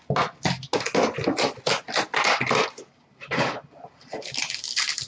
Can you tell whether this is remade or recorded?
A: recorded